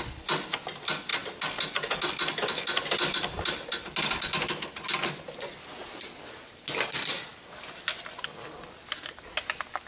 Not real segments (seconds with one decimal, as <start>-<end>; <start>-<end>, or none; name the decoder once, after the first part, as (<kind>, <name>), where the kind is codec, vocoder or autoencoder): none